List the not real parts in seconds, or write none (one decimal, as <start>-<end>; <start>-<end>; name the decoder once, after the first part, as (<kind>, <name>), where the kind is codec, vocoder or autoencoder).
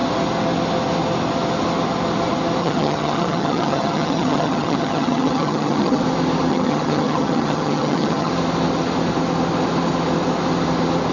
2.6-6.0 (vocoder, HiFi-GAN); 6.5-8.3